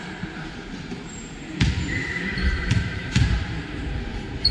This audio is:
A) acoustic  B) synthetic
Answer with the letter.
B